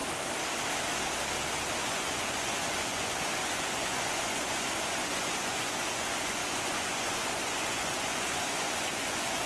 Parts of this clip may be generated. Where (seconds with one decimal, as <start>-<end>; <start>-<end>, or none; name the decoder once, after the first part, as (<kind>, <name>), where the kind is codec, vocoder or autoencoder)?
1.8-9.5 (vocoder, Vocos)